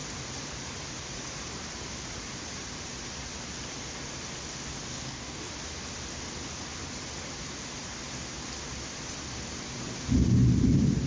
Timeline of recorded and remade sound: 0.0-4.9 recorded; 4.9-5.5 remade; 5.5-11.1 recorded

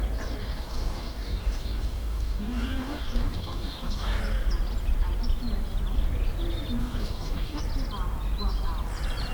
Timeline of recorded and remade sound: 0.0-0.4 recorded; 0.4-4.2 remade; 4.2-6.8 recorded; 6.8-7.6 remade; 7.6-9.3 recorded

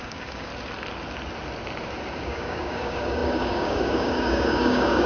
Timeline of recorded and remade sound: 0.0-0.5 remade; 0.5-2.2 recorded; 2.2-5.1 remade

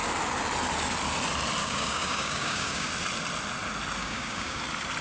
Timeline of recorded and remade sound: 0.0-1.6 recorded; 1.6-2.9 remade; 2.9-4.0 recorded; 4.0-4.6 remade; 4.6-5.0 recorded